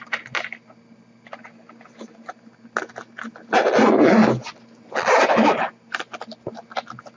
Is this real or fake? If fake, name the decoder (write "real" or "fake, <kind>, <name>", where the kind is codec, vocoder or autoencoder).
real